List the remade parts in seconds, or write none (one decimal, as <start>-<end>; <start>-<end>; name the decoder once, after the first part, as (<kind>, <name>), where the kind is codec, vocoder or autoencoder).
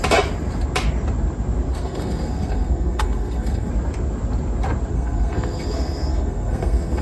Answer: 1.7-3.7 (codec, SNAC); 4.9-7.0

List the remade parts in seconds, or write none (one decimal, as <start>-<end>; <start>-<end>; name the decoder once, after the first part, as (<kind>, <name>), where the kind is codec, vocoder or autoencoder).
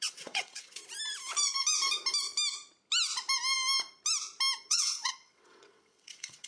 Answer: 0.0-0.8 (vocoder, WaveNeXt); 4.7-6.5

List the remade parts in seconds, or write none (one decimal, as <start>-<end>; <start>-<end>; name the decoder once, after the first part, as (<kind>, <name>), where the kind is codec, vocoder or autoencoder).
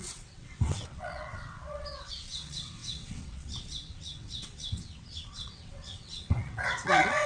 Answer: 0.0-7.3 (vocoder, WaveNeXt)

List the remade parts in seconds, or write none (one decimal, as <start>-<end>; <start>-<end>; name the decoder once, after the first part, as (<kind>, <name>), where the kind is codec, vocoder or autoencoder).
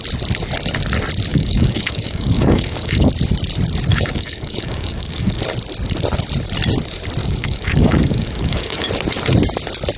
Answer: 1.3-3.1 (codec, DAC); 3.9-5.4; 7.2-8.9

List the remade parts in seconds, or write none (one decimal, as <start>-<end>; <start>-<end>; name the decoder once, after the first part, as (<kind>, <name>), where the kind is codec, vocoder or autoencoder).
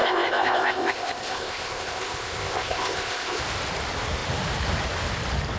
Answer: 0.0-3.4 (codec, ZipCodec)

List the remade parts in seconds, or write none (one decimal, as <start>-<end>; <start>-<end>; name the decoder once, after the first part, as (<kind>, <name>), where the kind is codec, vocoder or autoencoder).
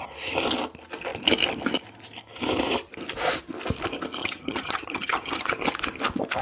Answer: 4.2-5.5 (vocoder, HiFi-GAN)